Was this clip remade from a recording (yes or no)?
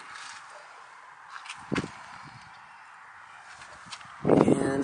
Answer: no